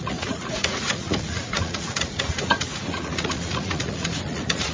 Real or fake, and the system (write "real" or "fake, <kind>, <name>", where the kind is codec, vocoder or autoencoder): fake, vocoder, Vocos